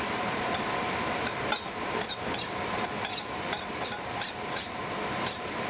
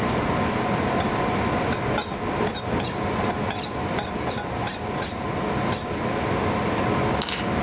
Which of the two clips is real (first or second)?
second